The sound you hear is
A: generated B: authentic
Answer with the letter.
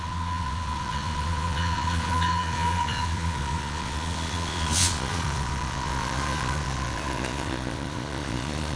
A